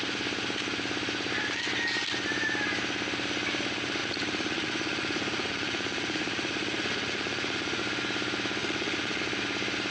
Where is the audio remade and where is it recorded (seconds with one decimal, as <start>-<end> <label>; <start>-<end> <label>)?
0.0-4.0 recorded; 4.0-7.8 remade; 7.8-8.6 recorded; 8.6-9.2 remade; 9.2-9.9 recorded